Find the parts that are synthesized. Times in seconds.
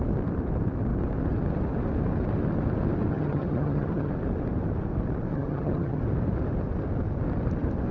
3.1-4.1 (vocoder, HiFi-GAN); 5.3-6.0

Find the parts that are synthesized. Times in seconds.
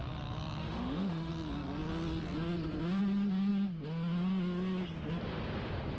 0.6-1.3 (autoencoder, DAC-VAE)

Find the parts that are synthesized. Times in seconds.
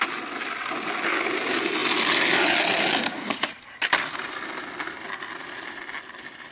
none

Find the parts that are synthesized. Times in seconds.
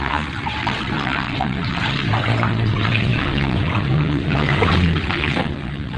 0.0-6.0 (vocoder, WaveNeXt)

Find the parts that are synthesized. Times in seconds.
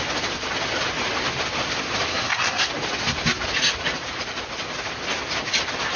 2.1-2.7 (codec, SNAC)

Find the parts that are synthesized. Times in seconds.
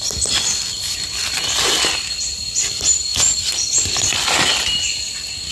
none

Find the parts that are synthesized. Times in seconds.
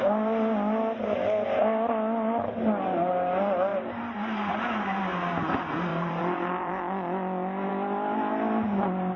3.7-5.0 (vocoder, BigVGAN v2); 5.9-6.8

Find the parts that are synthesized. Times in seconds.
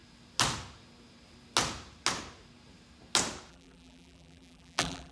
3.5-5.1 (vocoder, BigVGAN v2)